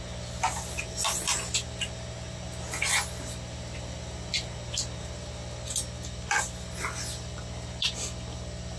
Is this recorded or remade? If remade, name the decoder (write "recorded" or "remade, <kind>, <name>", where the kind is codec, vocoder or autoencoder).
recorded